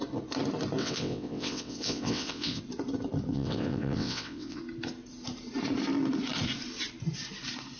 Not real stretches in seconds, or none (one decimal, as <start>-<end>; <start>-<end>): 0.8-2.6; 3.3-4.6

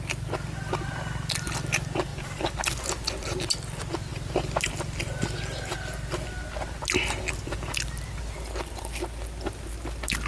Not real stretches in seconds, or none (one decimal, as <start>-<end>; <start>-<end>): none

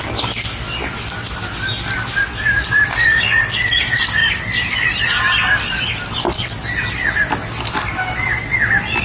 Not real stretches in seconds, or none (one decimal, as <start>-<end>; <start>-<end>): none

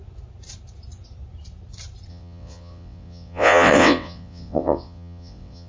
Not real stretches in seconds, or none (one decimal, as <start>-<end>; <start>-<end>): 2.1-5.7

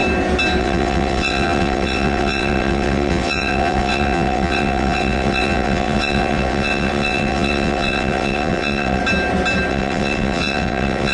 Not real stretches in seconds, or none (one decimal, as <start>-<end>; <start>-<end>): 0.6-9.0; 9.7-11.1

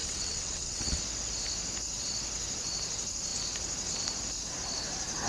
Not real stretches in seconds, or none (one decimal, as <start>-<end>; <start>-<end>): 0.0-1.0

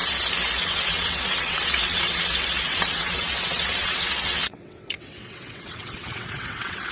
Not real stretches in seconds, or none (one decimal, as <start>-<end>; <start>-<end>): 0.6-6.9